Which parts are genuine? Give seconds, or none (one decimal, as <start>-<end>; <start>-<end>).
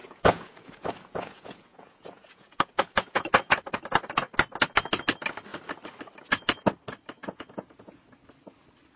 3.6-7.2; 8.0-9.0